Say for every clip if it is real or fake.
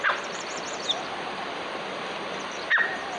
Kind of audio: real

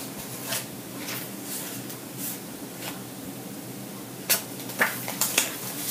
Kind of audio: real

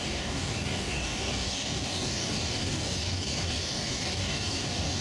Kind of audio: fake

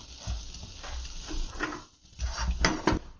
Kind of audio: real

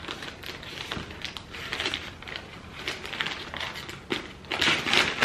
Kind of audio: real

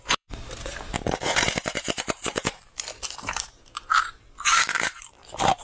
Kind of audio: fake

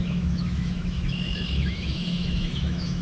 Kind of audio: fake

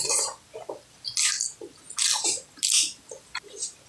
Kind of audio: real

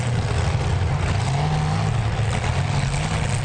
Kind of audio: real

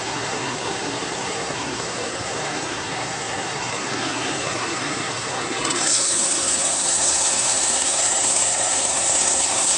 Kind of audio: fake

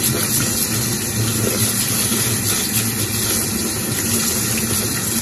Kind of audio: real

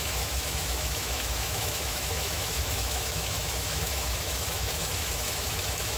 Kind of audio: fake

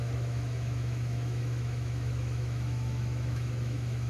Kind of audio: fake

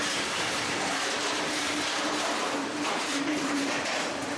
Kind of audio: fake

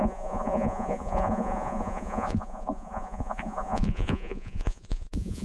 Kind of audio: fake